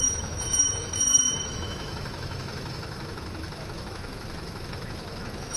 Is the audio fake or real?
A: fake